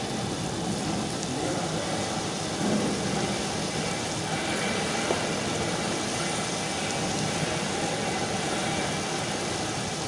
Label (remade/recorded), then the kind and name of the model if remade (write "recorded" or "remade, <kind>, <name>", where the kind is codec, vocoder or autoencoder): recorded